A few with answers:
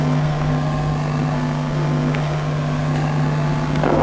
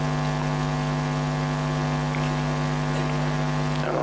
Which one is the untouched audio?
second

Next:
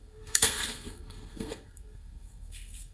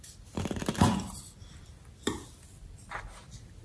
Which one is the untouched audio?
second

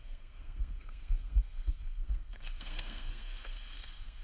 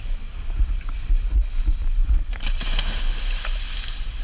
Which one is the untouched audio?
second